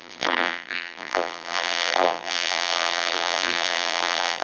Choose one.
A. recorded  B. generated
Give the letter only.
B